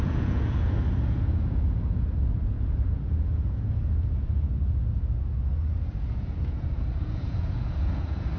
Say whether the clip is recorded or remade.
remade